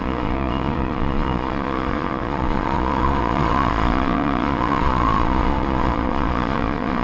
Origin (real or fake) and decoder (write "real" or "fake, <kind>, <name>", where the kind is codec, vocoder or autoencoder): fake, vocoder, Vocos